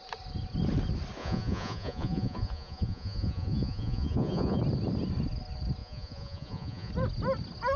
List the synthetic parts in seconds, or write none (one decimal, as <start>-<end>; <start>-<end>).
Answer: 1.2-4.6; 5.8-6.9